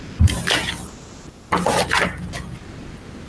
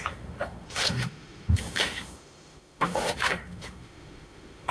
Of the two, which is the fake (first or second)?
second